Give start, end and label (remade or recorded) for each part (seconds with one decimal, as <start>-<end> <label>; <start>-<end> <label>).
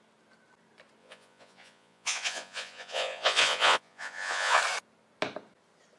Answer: 0.0-1.0 recorded; 1.0-4.6 remade; 4.6-6.0 recorded